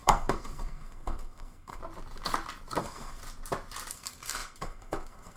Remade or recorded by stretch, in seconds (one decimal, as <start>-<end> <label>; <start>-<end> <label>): 0.0-1.8 remade; 1.8-2.8 recorded; 2.8-3.2 remade; 3.2-3.9 recorded; 3.9-5.4 remade

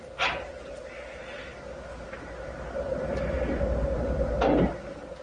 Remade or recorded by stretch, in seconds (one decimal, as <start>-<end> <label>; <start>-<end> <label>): 0.0-5.2 recorded

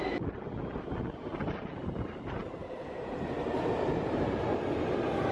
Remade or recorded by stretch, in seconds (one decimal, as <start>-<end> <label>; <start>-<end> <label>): 0.0-2.6 recorded; 2.6-3.9 remade; 3.9-5.3 recorded

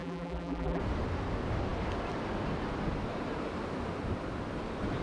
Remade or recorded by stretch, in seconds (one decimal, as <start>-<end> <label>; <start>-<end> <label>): 0.0-0.8 remade; 0.8-5.0 recorded

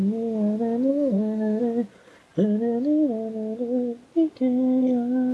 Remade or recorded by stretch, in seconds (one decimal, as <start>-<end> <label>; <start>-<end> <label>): 0.0-0.9 recorded; 0.9-1.6 remade; 1.6-5.3 recorded